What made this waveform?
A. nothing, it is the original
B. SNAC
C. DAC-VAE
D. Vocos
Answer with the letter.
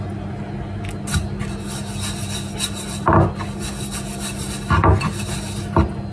A